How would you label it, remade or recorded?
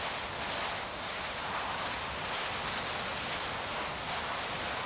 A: recorded